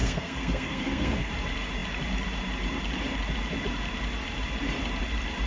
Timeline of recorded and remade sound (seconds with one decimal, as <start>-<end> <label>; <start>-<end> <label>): 0.0-1.3 remade; 1.3-5.5 recorded